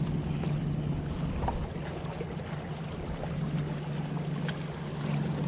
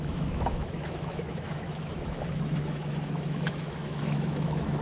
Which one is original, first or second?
first